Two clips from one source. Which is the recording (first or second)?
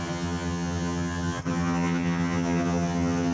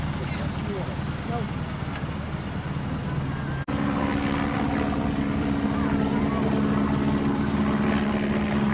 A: second